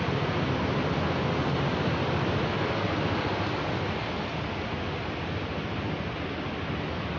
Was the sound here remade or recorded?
recorded